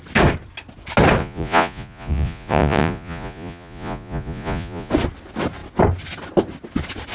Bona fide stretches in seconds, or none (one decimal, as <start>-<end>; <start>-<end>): 0.0-1.2; 4.9-7.1